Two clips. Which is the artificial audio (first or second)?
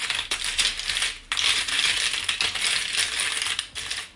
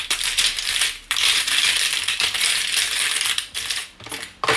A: second